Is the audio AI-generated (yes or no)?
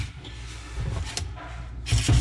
no